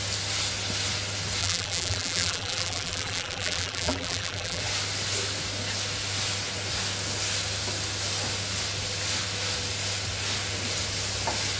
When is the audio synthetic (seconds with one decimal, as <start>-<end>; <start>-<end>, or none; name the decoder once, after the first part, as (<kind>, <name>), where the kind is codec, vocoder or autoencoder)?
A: 1.4-4.6 (vocoder, BigVGAN v2)